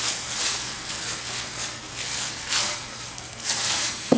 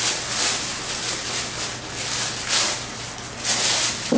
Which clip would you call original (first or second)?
second